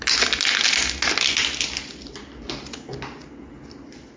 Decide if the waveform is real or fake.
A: real